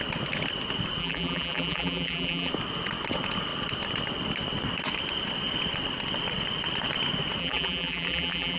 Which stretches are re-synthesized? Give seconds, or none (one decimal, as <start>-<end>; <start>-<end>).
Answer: 1.0-2.5; 7.4-8.6